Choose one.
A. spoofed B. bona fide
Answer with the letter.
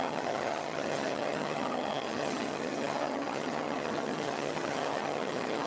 A